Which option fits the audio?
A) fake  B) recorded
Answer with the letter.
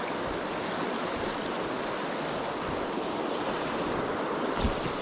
B